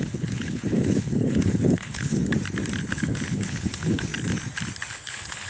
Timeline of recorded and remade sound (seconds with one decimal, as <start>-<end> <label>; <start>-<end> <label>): 0.0-2.2 remade; 2.2-2.9 recorded; 2.9-4.1 remade; 4.1-4.9 recorded; 4.9-5.5 remade